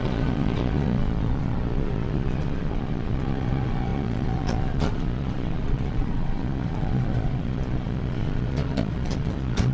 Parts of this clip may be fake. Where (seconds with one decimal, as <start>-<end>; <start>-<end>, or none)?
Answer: 0.0-9.7